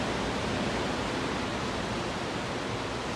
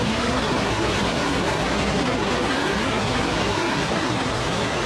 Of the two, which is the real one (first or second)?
first